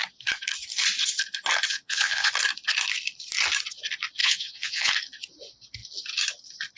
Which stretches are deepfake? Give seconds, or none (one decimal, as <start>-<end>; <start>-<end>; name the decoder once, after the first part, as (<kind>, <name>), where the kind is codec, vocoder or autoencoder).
1.7-2.3 (vocoder, Vocos); 4.2-4.9